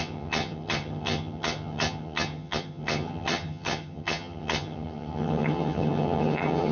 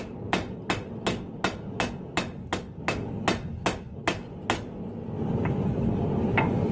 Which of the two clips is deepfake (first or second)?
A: first